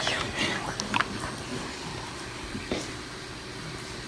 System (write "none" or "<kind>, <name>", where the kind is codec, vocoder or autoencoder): none